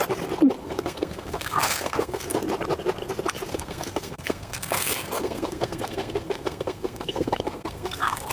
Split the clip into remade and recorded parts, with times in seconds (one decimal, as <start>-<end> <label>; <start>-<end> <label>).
0.0-0.6 recorded; 0.6-2.4 remade; 2.4-3.5 recorded; 3.5-8.3 remade